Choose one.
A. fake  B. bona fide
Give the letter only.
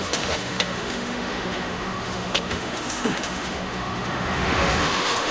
A